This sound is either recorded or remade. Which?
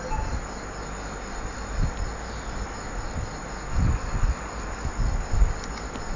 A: recorded